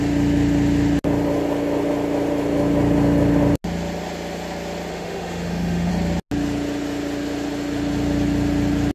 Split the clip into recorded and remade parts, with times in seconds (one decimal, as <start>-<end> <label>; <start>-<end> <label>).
0.0-4.9 recorded; 4.9-5.9 remade; 5.9-8.9 recorded